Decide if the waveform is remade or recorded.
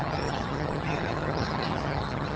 remade